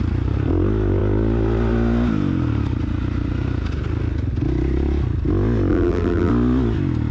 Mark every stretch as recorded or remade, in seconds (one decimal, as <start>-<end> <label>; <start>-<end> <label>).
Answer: 0.0-5.7 recorded; 5.7-6.3 remade; 6.3-7.1 recorded